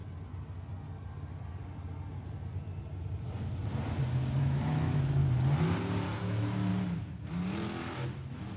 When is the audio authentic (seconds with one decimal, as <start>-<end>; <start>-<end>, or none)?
0.0-4.4; 5.2-6.2; 6.7-8.6